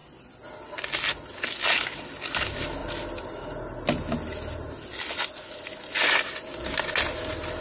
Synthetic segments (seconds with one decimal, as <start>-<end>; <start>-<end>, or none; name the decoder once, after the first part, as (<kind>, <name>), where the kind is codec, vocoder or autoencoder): none